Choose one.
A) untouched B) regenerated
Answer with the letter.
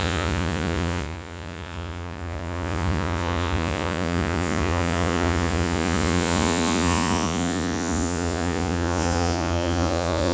B